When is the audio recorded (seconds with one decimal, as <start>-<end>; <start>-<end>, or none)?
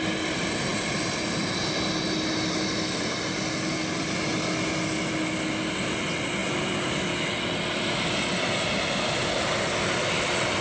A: 0.0-10.6